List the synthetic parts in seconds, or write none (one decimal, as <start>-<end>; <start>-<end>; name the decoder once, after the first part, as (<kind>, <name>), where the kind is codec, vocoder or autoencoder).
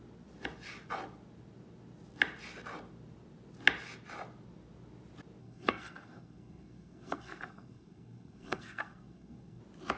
5.4-9.6 (codec, SNAC)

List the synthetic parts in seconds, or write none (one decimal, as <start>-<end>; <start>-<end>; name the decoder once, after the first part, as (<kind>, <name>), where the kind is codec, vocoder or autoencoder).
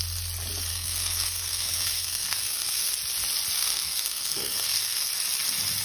0.7-2.9 (codec, SNAC); 3.6-5.1